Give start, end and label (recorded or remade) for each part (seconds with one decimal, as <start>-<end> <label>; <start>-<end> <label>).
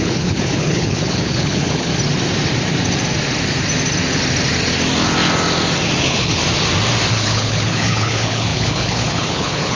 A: 0.0-1.9 remade; 1.9-6.0 recorded; 6.0-6.4 remade; 6.4-7.1 recorded; 7.1-9.8 remade